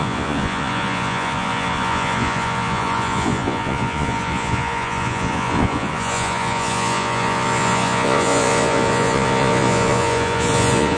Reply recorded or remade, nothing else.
remade